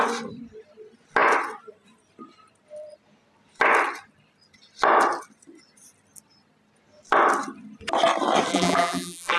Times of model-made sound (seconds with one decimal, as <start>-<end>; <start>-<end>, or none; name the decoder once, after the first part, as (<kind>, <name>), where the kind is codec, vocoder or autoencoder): 8.5-9.4 (vocoder, BigVGAN v2)